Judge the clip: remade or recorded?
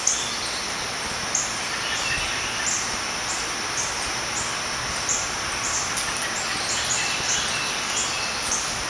recorded